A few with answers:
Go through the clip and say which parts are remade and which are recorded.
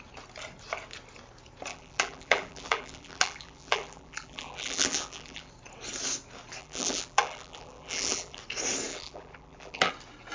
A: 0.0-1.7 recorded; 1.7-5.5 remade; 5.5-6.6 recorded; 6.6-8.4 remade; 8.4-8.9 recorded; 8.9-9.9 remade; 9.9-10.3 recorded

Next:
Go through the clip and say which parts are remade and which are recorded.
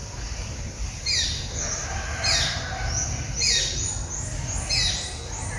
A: 0.0-0.7 recorded; 0.7-1.8 remade; 1.8-5.6 recorded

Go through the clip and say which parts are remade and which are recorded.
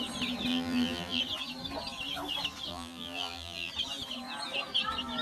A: 0.0-0.5 recorded; 0.5-1.2 remade; 1.2-2.7 recorded; 2.7-3.7 remade; 3.7-5.2 recorded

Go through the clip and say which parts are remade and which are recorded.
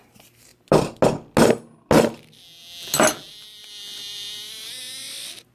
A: 0.0-5.5 recorded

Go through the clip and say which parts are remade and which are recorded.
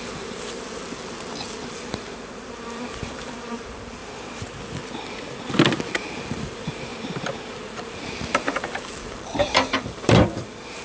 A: 0.0-4.0 remade; 4.0-5.9 recorded; 5.9-6.9 remade; 6.9-7.6 recorded; 7.6-10.8 remade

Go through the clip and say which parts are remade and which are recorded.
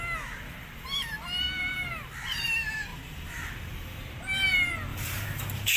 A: 0.0-2.9 recorded; 2.9-3.5 remade; 3.5-4.9 recorded; 4.9-5.8 remade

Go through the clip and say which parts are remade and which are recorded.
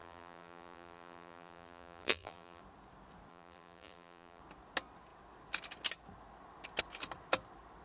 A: 0.0-2.6 remade; 2.6-3.3 recorded; 3.3-4.4 remade; 4.4-7.8 recorded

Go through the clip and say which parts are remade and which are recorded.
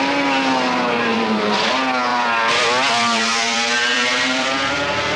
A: 0.0-1.1 recorded; 1.1-1.7 remade; 1.7-2.1 recorded; 2.1-4.7 remade; 4.7-5.2 recorded